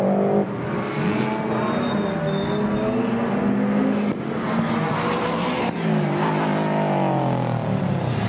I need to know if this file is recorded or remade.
recorded